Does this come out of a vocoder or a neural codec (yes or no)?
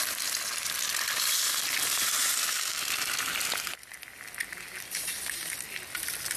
no